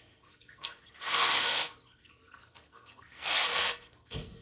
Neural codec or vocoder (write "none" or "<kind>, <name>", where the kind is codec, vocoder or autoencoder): codec, SNAC